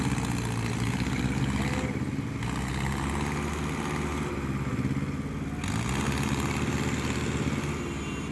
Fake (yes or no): no